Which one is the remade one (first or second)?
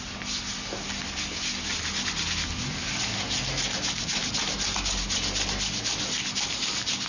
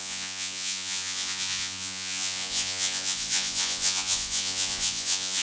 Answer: second